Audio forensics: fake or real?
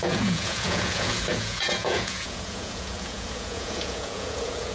fake